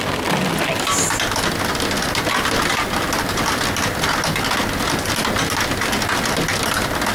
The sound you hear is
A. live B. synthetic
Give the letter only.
A